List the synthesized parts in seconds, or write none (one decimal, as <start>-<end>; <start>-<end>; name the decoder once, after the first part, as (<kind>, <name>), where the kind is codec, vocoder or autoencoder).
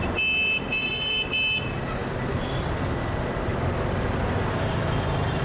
none